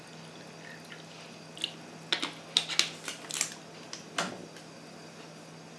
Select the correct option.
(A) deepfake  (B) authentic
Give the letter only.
B